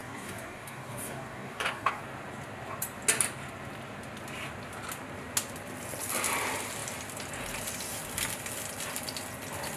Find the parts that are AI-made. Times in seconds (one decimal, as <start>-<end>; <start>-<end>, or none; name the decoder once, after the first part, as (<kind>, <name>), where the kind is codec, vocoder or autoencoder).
0.0-2.0 (codec, DAC)

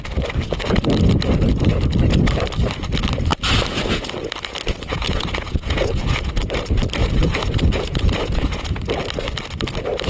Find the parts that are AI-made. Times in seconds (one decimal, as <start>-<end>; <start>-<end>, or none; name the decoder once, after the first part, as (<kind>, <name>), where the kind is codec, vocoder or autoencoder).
4.9-6.3 (vocoder, Vocos); 7.0-8.8

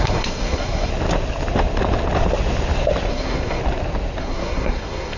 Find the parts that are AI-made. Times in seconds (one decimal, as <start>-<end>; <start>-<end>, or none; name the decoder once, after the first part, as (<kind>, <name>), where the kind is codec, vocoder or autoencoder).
0.0-0.9 (codec, SNAC); 3.1-3.6; 4.2-5.2